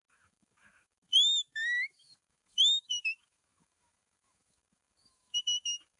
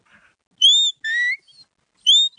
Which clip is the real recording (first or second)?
second